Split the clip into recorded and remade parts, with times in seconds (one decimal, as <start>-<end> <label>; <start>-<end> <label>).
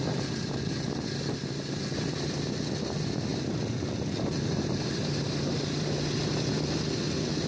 0.0-1.9 recorded; 1.9-2.5 remade; 2.5-3.3 recorded; 3.3-5.9 remade; 5.9-7.5 recorded